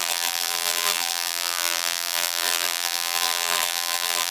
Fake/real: fake